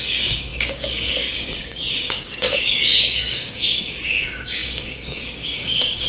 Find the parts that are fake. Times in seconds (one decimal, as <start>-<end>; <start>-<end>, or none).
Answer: 0.0-6.1